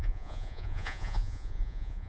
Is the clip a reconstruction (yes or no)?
yes